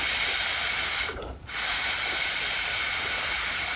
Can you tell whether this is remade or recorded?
recorded